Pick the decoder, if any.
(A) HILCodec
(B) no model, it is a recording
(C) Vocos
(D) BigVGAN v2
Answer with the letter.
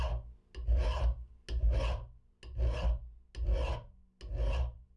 B